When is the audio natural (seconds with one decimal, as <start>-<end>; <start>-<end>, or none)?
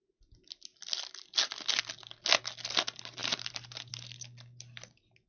0.0-3.2; 3.9-5.3